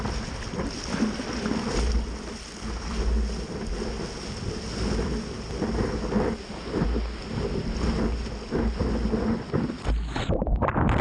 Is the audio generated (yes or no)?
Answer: no